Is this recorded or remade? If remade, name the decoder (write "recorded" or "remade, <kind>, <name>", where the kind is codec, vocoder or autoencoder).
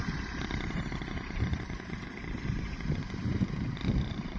remade, vocoder, BigVGAN v2